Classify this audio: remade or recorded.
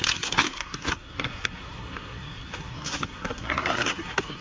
remade